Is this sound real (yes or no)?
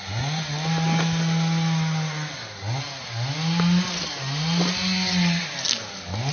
yes